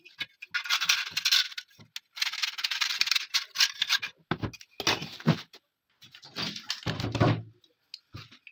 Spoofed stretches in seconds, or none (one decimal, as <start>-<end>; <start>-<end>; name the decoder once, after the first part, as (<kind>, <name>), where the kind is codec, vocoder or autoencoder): 5.0-5.7 (vocoder, BigVGAN v2)